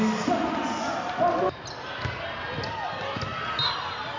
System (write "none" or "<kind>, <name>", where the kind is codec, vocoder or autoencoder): none